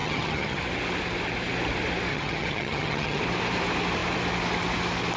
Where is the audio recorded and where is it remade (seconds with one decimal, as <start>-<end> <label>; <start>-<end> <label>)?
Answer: 0.0-0.6 remade; 0.6-2.1 recorded; 2.1-3.2 remade; 3.2-5.2 recorded